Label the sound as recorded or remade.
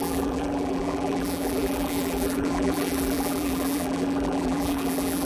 remade